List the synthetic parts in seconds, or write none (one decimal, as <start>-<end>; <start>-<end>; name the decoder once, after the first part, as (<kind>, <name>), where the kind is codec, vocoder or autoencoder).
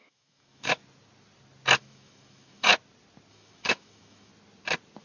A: 0.0-0.8 (autoencoder, DAC-VAE); 1.8-2.7; 3.3-4.3